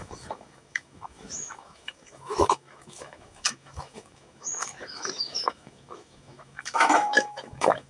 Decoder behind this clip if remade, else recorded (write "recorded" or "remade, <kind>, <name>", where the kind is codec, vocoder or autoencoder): remade, autoencoder, DAC-VAE